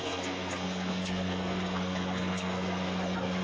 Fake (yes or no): yes